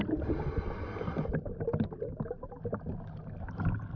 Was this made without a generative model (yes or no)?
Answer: yes